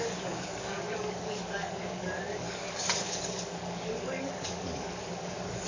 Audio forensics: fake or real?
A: fake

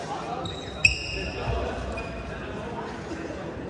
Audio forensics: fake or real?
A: real